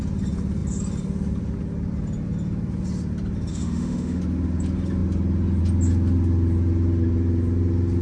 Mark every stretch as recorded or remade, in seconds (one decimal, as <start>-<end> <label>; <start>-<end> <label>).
0.0-3.5 recorded; 3.5-4.2 remade; 4.2-8.0 recorded

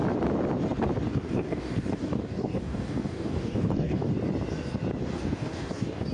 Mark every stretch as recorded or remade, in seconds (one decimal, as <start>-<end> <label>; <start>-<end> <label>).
0.0-1.1 recorded; 1.1-4.1 remade; 4.1-5.0 recorded; 5.0-6.1 remade

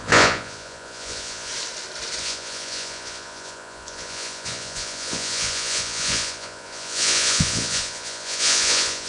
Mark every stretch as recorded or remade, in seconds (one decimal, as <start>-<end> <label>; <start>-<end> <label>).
0.0-1.5 remade; 1.5-2.2 recorded; 2.2-9.1 remade

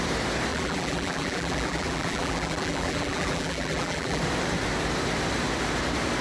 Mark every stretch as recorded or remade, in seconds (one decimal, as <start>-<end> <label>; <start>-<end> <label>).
0.0-0.5 recorded; 0.5-4.2 remade; 4.2-6.2 recorded

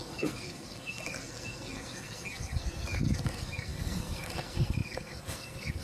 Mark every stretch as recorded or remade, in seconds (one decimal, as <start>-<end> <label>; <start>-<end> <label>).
0.0-5.8 remade

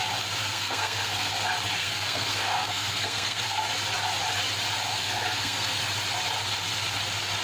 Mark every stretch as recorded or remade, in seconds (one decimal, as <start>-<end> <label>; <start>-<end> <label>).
0.0-0.4 recorded; 0.4-1.3 remade; 1.3-1.8 recorded; 1.8-3.7 remade; 3.7-4.9 recorded; 4.9-5.8 remade; 5.8-7.4 recorded

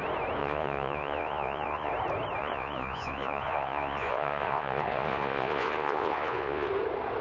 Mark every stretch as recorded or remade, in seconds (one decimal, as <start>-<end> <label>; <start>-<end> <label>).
0.0-0.4 recorded; 0.4-1.9 remade; 1.9-2.4 recorded; 2.4-6.7 remade; 6.7-7.2 recorded

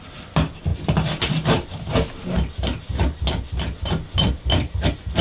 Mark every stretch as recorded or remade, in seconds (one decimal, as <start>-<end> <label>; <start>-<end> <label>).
0.0-5.2 recorded